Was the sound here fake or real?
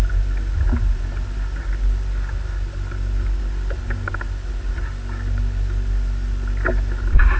real